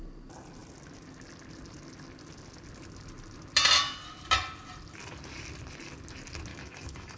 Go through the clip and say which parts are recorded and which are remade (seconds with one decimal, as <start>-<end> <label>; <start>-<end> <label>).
0.0-6.5 recorded; 6.5-7.2 remade